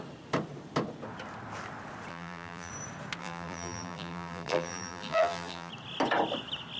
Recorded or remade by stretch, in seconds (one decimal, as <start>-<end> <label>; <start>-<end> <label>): 0.0-2.1 recorded; 2.1-2.7 remade; 2.7-3.2 recorded; 3.2-5.7 remade; 5.7-6.8 recorded